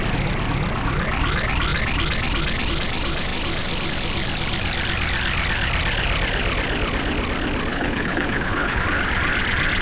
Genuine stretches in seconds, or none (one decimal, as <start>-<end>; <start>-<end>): 0.0-7.7; 8.8-9.8